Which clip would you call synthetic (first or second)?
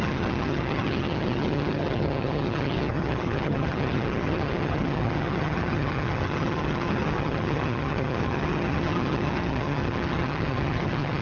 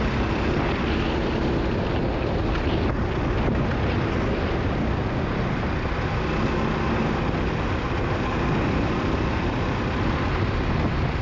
first